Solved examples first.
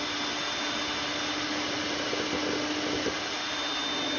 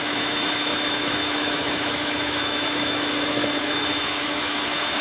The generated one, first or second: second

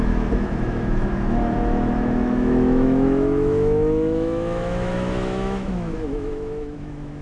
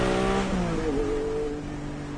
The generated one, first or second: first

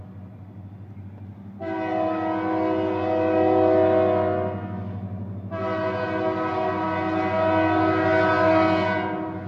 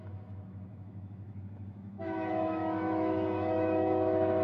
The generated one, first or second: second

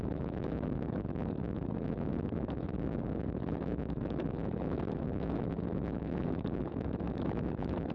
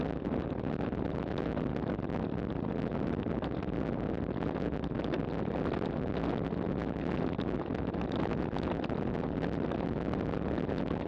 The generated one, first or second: first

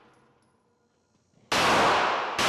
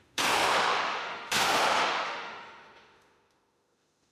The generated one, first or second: second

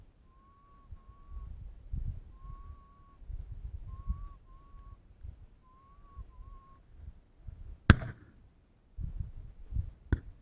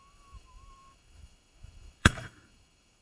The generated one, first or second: second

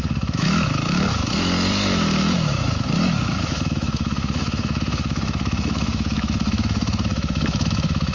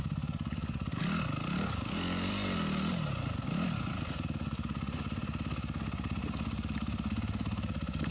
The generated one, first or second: first